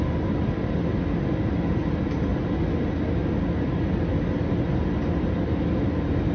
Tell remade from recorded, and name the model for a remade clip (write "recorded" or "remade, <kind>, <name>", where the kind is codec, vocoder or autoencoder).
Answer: recorded